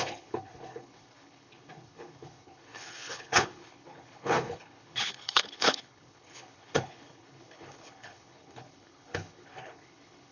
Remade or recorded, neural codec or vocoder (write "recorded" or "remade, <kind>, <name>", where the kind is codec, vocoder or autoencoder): remade, codec, HILCodec